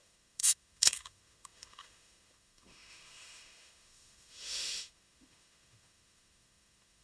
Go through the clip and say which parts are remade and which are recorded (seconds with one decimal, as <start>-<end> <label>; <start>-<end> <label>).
0.0-7.0 remade